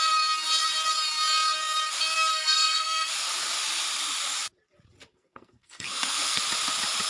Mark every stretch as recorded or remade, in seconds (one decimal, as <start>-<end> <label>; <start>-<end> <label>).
0.0-2.3 recorded; 2.3-3.1 remade; 3.1-5.1 recorded; 5.1-6.4 remade; 6.4-7.1 recorded